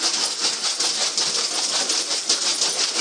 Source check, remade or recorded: recorded